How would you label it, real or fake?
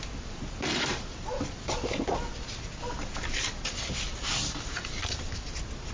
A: real